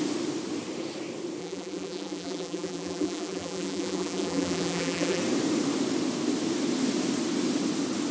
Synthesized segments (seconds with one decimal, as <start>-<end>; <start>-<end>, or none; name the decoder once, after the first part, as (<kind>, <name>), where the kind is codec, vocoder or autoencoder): 1.4-5.2 (vocoder, BigVGAN v2)